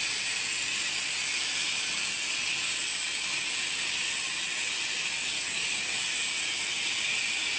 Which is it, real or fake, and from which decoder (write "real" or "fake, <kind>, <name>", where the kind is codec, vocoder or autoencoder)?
real